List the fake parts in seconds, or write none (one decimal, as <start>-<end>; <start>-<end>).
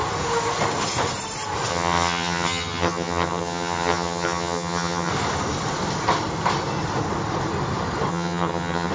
1.7-5.1; 8.1-8.9